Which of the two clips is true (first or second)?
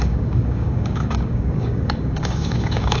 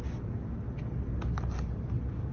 second